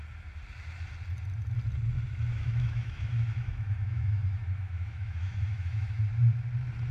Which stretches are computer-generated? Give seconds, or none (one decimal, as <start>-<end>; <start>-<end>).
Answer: 2.3-6.0